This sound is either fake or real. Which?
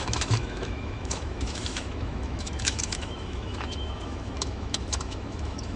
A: fake